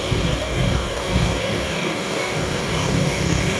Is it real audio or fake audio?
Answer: fake